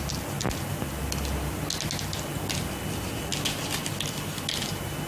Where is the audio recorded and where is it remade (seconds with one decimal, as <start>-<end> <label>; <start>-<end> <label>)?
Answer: 0.0-5.1 recorded